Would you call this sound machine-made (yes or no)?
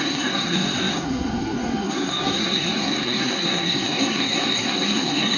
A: yes